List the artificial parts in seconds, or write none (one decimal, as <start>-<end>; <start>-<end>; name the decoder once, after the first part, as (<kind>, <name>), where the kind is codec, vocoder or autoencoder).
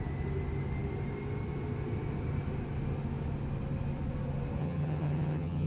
4.6-5.7 (vocoder, HiFi-GAN)